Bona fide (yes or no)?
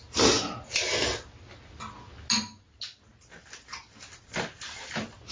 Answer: yes